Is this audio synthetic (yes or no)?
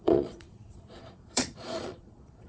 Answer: yes